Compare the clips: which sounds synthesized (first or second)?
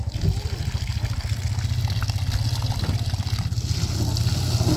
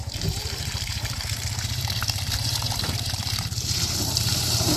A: second